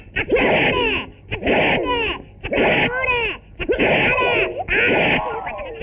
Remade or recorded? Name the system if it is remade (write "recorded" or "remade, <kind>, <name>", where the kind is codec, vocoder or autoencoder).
recorded